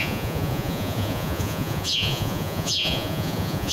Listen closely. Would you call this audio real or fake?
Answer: fake